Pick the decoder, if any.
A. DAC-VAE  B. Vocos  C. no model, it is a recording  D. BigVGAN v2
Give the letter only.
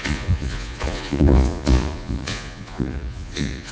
B